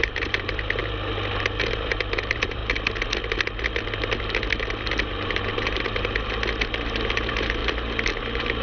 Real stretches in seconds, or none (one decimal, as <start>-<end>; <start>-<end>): 0.8-1.7; 2.6-5.1; 6.1-6.6; 7.6-8.1